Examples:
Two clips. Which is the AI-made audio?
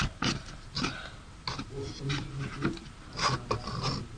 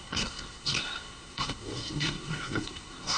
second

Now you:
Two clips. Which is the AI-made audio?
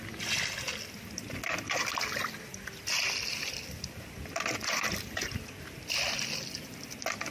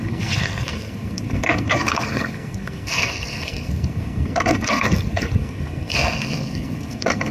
second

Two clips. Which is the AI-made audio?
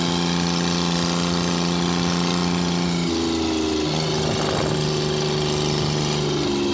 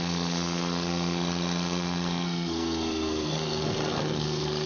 second